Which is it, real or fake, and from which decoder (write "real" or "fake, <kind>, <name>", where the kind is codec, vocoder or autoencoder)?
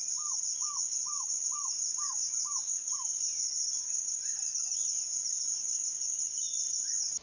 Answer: real